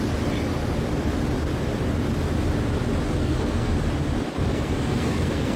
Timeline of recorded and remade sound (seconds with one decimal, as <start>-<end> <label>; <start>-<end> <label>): 0.0-3.2 recorded; 3.2-3.7 remade; 3.7-4.5 recorded; 4.5-5.6 remade